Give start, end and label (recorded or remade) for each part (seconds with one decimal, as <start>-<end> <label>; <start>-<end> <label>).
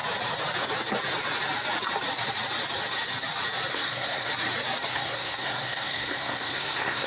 0.0-3.7 recorded; 3.7-4.3 remade; 4.3-4.9 recorded; 4.9-7.1 remade